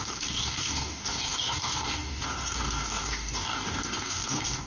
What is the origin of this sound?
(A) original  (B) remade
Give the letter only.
B